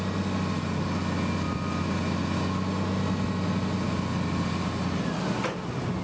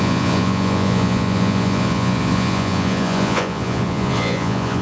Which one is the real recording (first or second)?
first